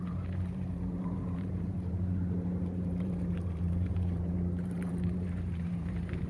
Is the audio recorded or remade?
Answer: remade